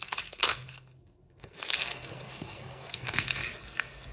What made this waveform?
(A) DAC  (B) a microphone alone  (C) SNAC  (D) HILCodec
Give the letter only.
C